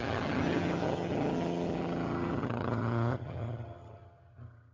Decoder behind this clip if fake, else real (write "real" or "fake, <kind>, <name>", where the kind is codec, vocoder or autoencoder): fake, vocoder, HiFi-GAN